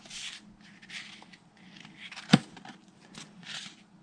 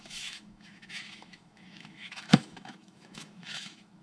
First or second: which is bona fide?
first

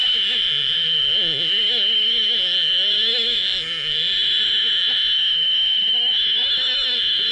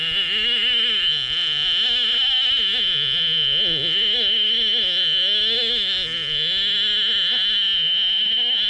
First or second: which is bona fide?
second